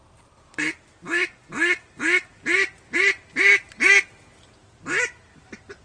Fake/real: real